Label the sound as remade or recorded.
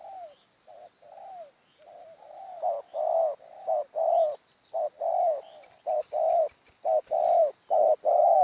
remade